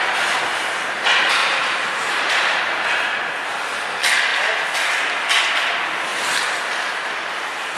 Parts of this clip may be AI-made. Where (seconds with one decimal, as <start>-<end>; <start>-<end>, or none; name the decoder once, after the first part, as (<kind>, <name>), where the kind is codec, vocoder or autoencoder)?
1.4-2.6 (vocoder, BigVGAN v2)

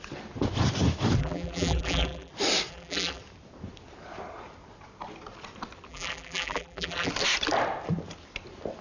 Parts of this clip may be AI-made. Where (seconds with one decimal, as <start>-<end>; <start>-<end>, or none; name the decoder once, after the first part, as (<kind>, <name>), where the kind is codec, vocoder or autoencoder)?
1.2-2.3 (vocoder, BigVGAN v2); 2.7-3.2; 5.9-7.1